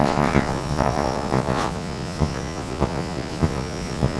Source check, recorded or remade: remade